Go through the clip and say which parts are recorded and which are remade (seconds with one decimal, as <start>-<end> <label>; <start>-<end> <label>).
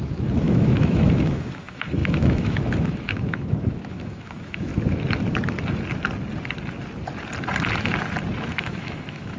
0.0-4.7 remade; 4.7-8.6 recorded; 8.6-9.4 remade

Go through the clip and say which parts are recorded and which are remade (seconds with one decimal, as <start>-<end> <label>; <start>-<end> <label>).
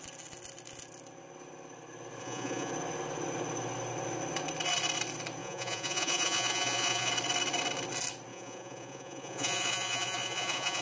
0.0-2.2 recorded; 2.2-2.7 remade; 2.7-5.4 recorded; 5.4-7.1 remade; 7.1-8.3 recorded; 8.3-10.8 remade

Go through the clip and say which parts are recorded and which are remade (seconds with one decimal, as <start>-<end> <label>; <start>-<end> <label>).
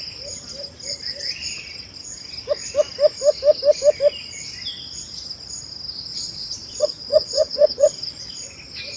0.0-6.1 recorded; 6.1-8.3 remade; 8.3-9.0 recorded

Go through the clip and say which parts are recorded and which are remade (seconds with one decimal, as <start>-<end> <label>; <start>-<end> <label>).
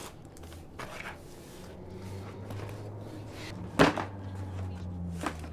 0.0-5.5 recorded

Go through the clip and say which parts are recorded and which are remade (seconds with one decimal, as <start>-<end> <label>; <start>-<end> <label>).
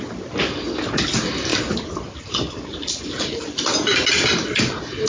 0.0-5.1 recorded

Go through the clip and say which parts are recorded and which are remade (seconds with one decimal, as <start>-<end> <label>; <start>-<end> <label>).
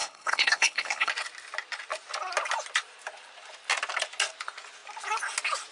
0.0-1.1 remade; 1.1-5.7 recorded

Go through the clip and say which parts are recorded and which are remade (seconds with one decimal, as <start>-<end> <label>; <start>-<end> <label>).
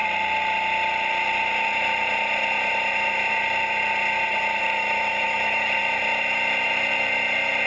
0.0-4.6 recorded; 4.6-5.8 remade; 5.8-7.7 recorded